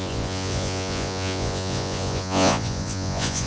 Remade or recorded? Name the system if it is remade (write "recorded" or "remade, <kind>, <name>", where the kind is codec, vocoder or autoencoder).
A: remade, vocoder, Vocos